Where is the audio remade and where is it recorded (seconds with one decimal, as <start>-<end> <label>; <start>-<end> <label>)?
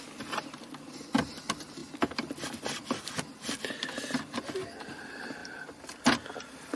0.0-6.8 recorded